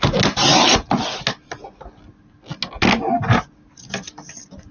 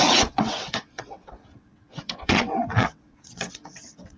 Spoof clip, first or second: second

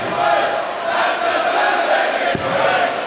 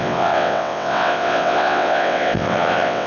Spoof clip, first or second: second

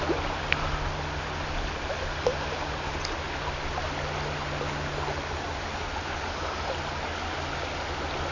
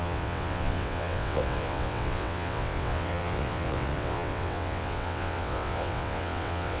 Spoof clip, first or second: second